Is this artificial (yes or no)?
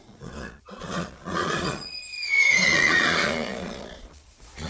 yes